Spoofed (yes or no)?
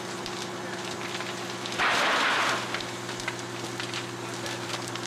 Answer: no